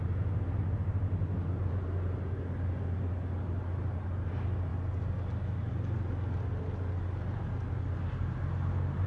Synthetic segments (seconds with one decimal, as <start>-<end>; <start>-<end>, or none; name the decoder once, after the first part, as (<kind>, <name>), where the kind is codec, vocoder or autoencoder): none